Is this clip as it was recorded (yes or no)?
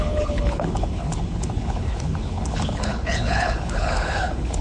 no